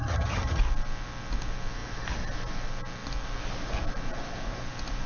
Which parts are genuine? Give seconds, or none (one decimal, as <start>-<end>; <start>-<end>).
0.6-5.1